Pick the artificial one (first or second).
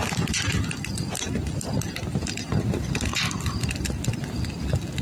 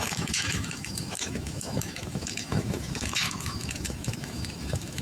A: second